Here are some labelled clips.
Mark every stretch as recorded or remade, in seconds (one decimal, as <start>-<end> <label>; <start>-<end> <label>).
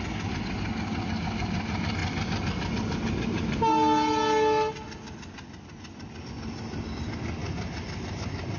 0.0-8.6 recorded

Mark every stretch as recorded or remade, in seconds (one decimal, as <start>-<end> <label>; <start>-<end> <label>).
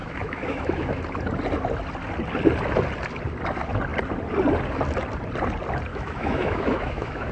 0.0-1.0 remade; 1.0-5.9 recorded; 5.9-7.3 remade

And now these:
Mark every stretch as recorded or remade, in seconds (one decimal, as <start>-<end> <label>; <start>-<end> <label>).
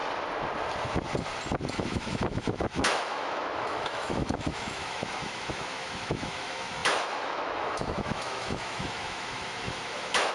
0.0-1.7 recorded; 1.7-10.3 remade